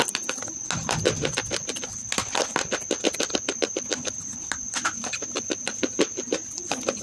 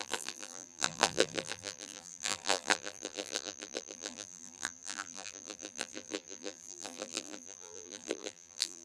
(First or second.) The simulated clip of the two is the second